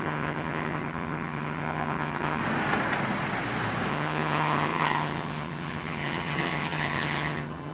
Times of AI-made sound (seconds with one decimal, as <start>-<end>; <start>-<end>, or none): 0.0-2.4; 3.9-7.7